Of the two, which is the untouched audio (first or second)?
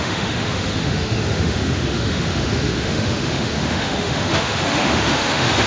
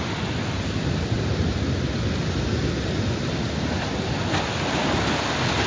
second